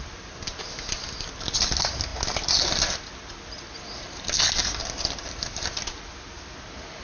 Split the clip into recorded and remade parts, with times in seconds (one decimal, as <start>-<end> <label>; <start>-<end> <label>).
0.0-7.0 recorded